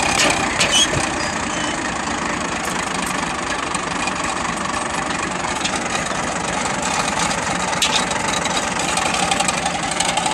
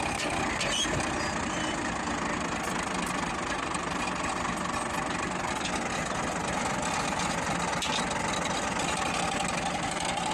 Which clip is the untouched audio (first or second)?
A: second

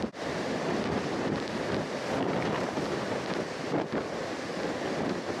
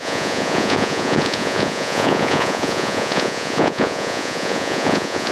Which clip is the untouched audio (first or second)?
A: first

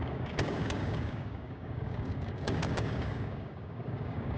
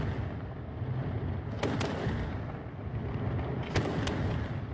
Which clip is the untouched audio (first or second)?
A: second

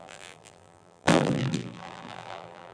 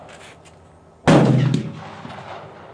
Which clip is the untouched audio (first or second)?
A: second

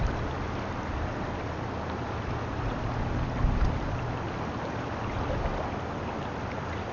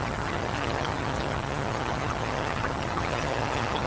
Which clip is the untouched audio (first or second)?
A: first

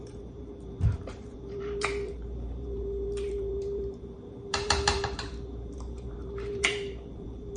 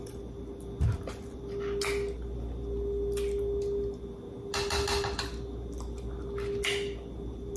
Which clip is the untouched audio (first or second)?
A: second